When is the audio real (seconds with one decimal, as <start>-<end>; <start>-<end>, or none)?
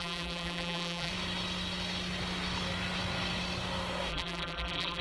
1.1-4.1